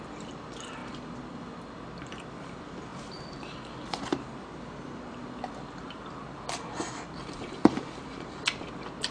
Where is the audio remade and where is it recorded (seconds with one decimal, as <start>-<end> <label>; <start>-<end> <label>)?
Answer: 0.0-0.8 recorded; 0.8-1.4 remade; 1.4-2.9 recorded; 2.9-6.5 remade; 6.5-9.1 recorded